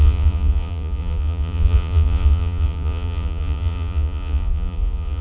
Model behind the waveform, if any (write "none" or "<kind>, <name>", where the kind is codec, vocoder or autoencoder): vocoder, Vocos